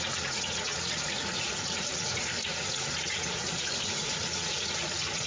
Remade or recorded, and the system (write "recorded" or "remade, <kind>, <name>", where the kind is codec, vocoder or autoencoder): remade, vocoder, Vocos